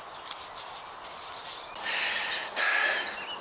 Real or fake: real